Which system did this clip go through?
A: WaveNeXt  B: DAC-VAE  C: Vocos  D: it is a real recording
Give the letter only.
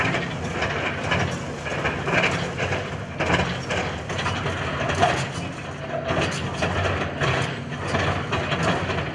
D